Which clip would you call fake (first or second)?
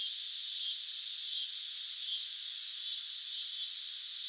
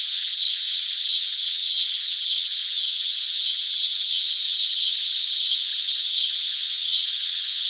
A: second